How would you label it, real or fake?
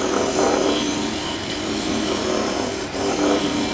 real